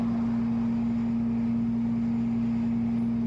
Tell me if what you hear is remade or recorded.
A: recorded